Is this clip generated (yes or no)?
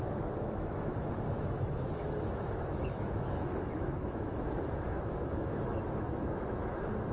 yes